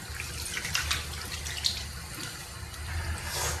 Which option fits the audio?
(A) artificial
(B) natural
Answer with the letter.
B